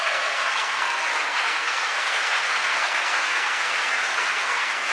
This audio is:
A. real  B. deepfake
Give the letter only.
B